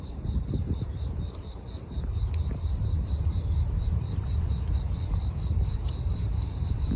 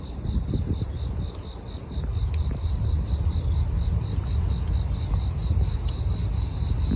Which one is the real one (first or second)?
second